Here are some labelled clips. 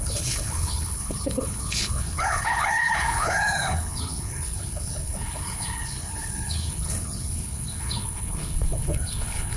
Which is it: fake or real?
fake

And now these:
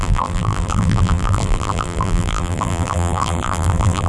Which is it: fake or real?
fake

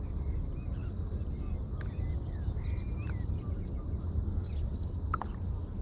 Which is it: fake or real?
real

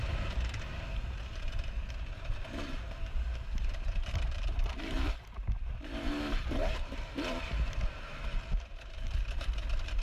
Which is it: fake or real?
fake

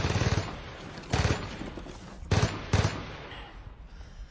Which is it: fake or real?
real